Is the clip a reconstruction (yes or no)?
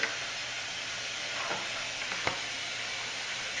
no